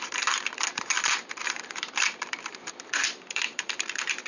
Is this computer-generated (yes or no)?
yes